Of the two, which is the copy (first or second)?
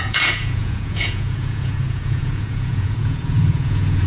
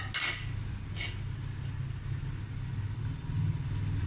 first